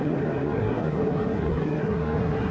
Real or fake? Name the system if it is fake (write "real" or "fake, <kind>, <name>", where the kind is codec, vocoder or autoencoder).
fake, codec, SNAC